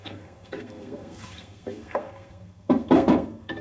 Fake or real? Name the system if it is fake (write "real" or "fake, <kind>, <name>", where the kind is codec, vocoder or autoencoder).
fake, codec, SNAC